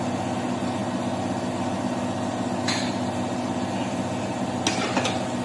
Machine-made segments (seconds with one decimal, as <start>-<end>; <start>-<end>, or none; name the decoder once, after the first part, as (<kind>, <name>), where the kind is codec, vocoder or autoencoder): none